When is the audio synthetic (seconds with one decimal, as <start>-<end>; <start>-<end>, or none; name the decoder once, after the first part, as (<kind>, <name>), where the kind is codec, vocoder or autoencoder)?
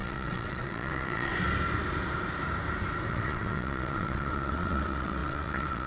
0.0-1.3 (vocoder, WaveNeXt); 3.1-5.9